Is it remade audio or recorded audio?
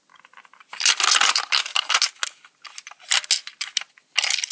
recorded